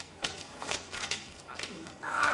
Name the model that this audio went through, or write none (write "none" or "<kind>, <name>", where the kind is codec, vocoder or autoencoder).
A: codec, SNAC